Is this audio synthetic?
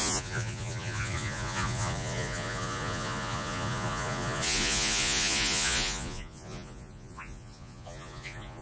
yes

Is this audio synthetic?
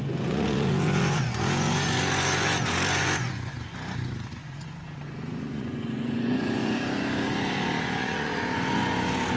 yes